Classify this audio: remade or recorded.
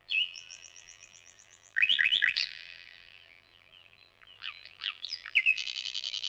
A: remade